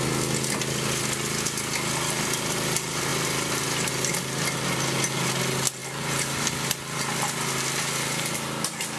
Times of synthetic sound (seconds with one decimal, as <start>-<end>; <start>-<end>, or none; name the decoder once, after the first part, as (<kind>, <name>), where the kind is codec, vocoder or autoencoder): none

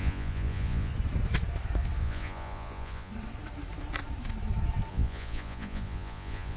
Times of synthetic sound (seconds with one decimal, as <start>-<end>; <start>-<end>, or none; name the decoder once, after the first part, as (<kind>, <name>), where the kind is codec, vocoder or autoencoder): 0.0-0.9 (vocoder, Vocos); 2.0-3.1; 4.9-6.6